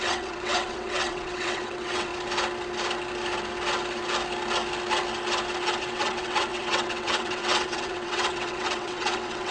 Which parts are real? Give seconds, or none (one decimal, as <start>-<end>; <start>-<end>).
2.1-5.8